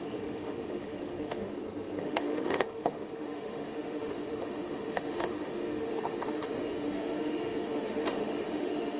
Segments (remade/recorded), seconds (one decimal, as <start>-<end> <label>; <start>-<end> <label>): 0.0-1.5 remade; 1.5-2.0 recorded; 2.0-9.0 remade